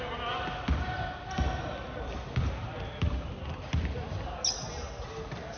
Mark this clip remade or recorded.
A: recorded